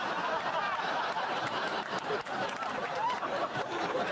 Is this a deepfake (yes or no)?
yes